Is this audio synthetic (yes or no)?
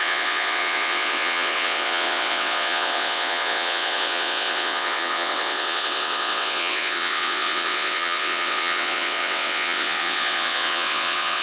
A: yes